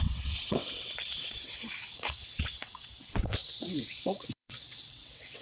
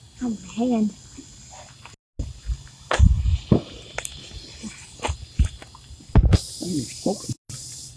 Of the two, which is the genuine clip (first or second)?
second